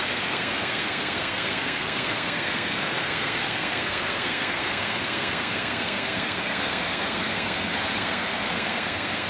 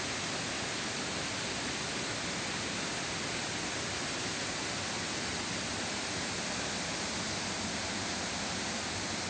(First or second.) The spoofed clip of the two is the first